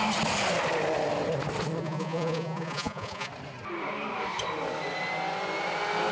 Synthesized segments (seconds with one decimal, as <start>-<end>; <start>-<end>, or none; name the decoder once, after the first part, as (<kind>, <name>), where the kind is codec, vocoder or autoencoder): 1.8-3.3 (vocoder, Vocos)